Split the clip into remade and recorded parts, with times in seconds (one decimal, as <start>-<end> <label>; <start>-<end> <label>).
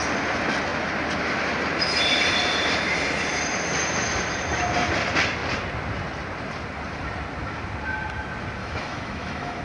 0.0-8.6 recorded; 8.6-9.6 remade